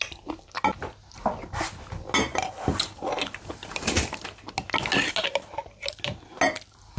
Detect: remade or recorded recorded